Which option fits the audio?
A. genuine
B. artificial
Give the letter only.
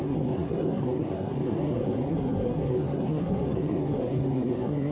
B